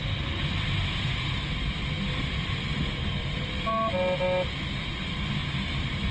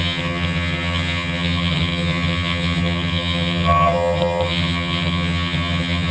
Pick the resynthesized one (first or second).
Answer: second